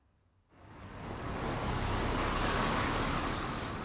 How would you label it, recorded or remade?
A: remade